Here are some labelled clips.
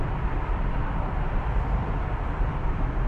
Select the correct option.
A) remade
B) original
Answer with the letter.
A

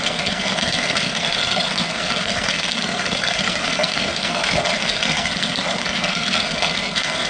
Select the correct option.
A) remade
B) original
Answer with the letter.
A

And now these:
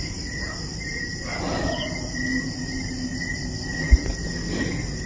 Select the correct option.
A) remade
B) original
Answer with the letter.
B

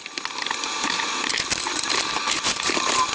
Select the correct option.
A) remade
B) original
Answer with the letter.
B